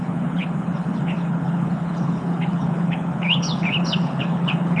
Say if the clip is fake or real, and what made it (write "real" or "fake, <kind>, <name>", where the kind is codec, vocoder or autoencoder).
fake, codec, HILCodec